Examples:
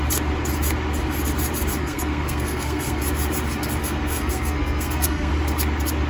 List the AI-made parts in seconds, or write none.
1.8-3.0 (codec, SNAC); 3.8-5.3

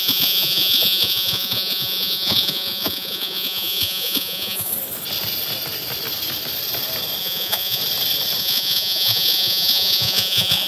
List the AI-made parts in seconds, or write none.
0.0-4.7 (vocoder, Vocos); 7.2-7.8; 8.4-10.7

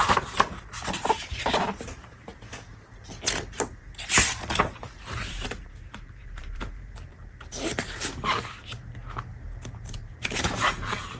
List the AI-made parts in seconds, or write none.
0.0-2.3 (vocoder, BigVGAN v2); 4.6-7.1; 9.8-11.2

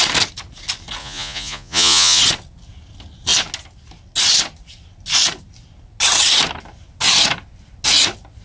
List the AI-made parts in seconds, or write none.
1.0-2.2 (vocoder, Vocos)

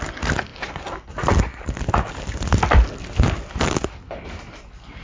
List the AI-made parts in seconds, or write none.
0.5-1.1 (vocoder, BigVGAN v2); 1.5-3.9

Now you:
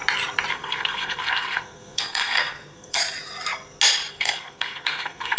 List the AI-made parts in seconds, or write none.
0.5-3.0 (codec, SNAC); 4.1-5.4

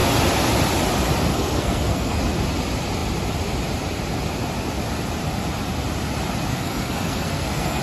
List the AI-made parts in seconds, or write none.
1.3-2.2 (codec, SNAC); 6.5-7.8

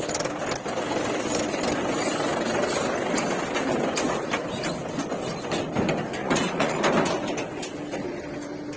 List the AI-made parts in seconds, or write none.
6.2-6.8 (vocoder, Vocos)